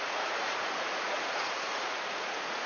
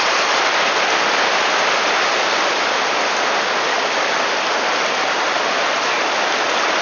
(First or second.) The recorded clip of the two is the second